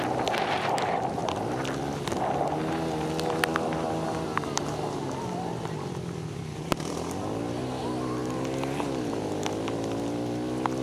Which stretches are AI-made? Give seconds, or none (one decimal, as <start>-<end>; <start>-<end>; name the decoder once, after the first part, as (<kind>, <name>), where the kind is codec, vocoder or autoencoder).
none